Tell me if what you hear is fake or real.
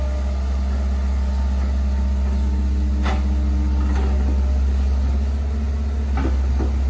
real